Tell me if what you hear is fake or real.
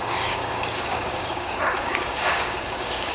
fake